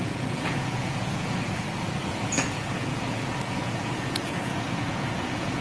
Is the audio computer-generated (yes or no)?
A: yes